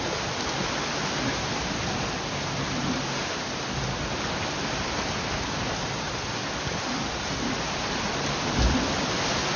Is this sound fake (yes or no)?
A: no